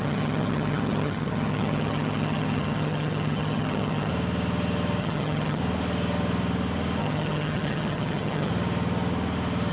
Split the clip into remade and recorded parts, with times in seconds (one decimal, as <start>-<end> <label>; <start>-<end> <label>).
0.0-4.1 remade; 4.1-5.0 recorded; 5.0-5.6 remade; 5.6-7.0 recorded; 7.0-8.5 remade; 8.5-9.7 recorded